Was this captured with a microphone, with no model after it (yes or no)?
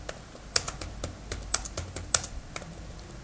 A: yes